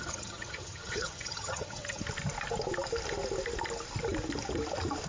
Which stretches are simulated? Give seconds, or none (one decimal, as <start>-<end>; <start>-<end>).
0.0-2.0